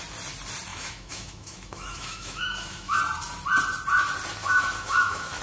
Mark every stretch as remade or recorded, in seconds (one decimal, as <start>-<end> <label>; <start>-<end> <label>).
0.0-0.7 recorded; 0.7-3.0 remade; 3.0-4.4 recorded; 4.4-5.4 remade